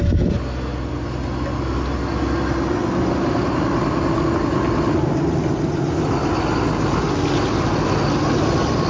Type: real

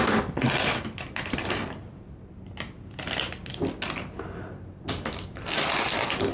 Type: real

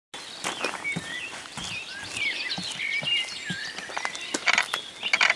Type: real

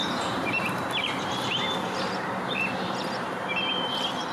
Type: fake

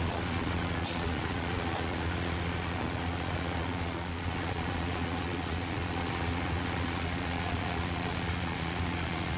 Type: fake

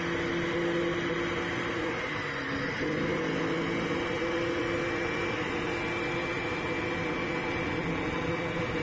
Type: real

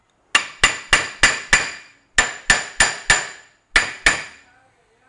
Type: real